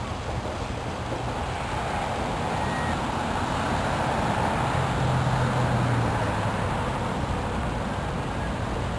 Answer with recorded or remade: recorded